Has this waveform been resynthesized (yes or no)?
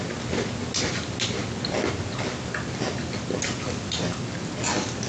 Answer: no